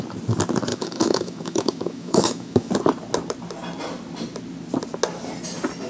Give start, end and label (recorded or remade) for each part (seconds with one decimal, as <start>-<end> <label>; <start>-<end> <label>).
0.0-0.7 recorded; 0.7-2.7 remade; 2.7-5.9 recorded